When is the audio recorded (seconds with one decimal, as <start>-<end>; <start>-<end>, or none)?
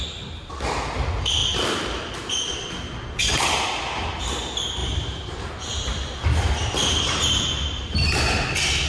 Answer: 0.0-4.8; 5.5-8.9